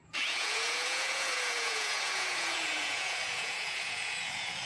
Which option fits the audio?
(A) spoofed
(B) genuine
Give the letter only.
A